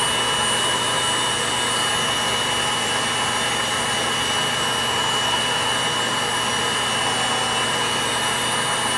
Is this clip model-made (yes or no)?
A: no